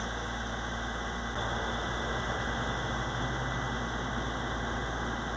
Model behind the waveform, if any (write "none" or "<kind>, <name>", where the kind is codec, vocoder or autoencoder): none